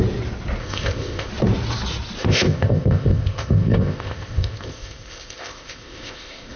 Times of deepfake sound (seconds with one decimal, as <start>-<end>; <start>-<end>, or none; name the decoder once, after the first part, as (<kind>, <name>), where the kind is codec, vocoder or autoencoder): 0.6-1.3 (codec, ZipCodec); 2.2-6.6